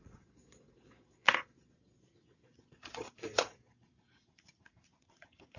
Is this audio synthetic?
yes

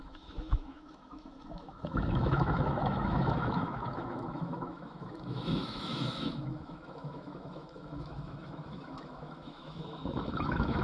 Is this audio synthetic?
yes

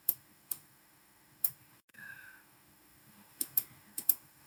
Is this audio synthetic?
yes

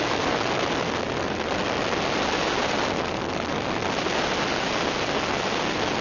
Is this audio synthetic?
no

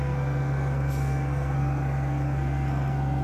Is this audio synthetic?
yes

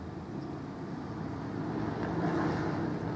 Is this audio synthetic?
no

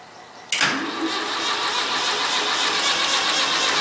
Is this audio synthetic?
no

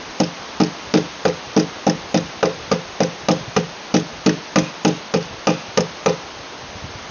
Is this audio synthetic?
no